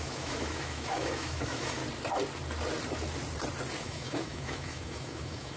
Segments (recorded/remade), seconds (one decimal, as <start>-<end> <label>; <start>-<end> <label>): 0.0-1.8 remade; 1.8-3.8 recorded; 3.8-5.6 remade